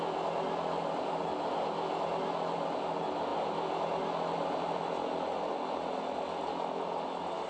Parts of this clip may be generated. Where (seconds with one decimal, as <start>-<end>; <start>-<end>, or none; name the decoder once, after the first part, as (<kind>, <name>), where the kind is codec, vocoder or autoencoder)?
none